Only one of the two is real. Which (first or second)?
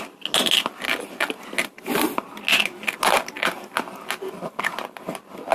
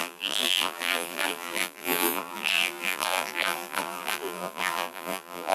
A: first